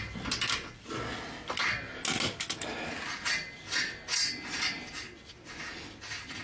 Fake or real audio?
real